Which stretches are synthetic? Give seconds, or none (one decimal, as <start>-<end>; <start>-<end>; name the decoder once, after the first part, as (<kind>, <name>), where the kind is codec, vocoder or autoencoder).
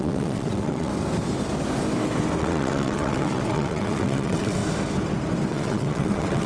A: 0.0-0.9 (vocoder, WaveNeXt); 2.4-4.6; 5.5-6.5